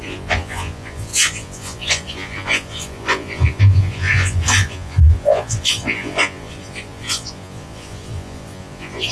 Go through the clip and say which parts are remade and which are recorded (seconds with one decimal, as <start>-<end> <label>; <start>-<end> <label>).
0.0-9.1 remade